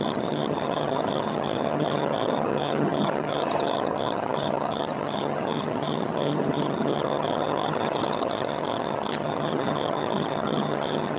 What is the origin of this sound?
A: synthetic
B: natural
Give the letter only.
A